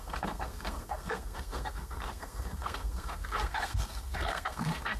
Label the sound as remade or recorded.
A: remade